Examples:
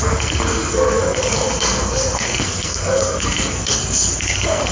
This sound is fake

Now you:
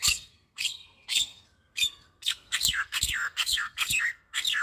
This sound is fake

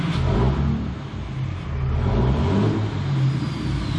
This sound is real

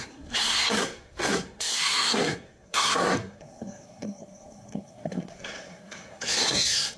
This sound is fake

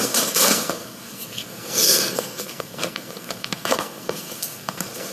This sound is fake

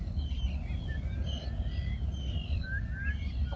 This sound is real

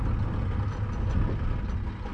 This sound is real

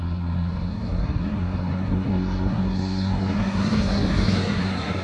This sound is fake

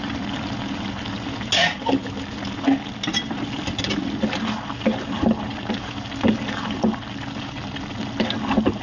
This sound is real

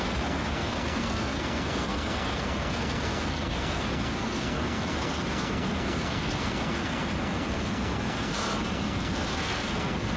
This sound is fake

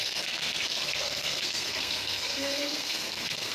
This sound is fake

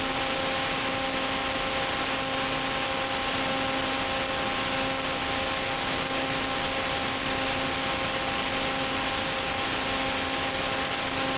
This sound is real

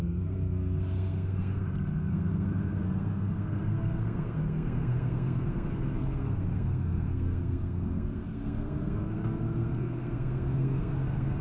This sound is fake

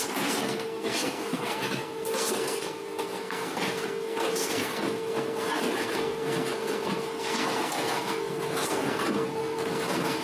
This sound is fake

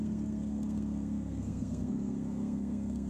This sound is fake